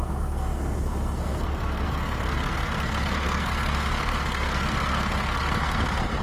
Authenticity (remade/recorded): remade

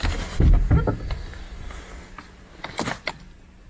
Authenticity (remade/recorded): recorded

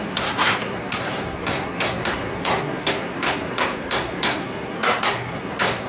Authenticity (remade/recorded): remade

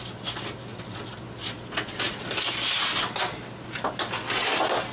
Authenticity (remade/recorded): recorded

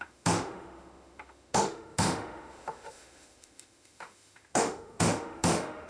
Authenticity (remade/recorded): remade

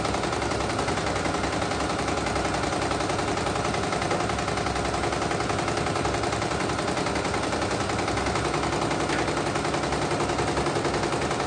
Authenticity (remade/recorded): recorded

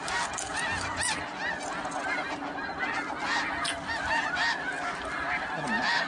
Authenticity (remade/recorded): recorded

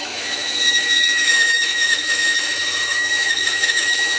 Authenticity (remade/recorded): remade